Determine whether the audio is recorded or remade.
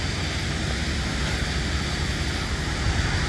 recorded